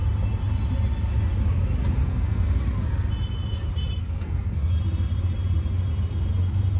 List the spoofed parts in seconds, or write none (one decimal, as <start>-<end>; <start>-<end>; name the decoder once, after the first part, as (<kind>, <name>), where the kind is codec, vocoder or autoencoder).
2.0-2.6 (codec, SNAC); 4.0-4.7